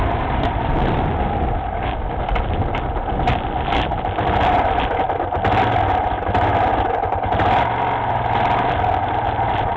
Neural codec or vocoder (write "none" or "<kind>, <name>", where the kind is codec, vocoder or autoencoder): none